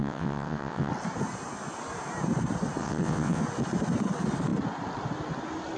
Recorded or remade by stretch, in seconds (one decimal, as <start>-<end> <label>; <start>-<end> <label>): 0.0-0.9 remade; 0.9-2.8 recorded; 2.8-3.4 remade; 3.4-5.8 recorded